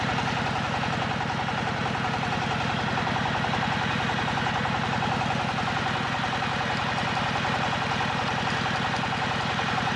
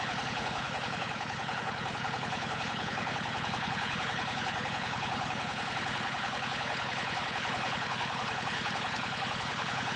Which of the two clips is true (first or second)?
first